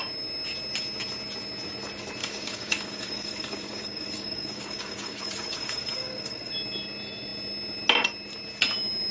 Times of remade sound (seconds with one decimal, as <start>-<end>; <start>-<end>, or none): 2.2-6.5

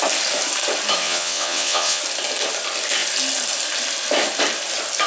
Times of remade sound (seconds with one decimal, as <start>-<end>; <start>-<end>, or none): 1.0-2.0

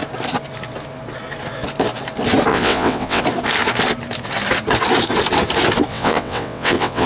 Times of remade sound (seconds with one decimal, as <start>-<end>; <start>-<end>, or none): 2.5-3.2; 5.9-7.1

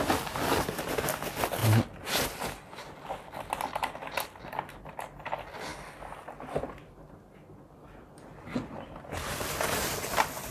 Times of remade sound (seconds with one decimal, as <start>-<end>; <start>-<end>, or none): none